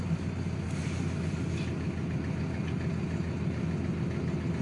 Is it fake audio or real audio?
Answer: real